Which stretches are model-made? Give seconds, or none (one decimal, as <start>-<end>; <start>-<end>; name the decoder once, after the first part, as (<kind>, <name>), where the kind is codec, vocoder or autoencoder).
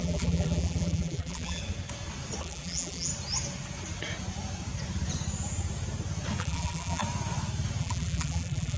0.0-1.6 (vocoder, BigVGAN v2); 2.4-3.1; 6.4-7.0; 7.8-8.8